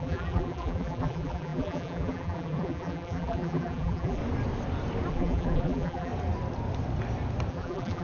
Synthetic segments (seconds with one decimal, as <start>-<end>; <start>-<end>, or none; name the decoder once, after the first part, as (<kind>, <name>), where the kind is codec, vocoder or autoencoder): 0.0-4.2 (vocoder, BigVGAN v2); 5.1-6.1; 7.5-8.0